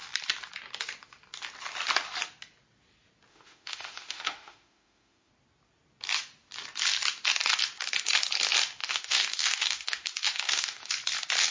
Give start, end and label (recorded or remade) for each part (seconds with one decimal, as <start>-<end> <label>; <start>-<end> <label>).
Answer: 0.0-3.3 recorded; 3.3-5.3 remade; 5.3-8.8 recorded; 8.8-10.9 remade; 10.9-11.5 recorded